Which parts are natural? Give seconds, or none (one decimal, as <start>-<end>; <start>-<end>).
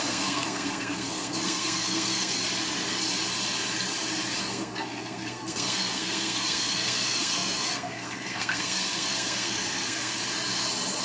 2.4-4.4; 10.2-11.0